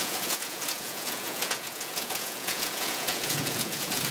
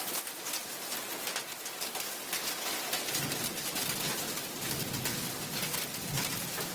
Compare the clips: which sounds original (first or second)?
second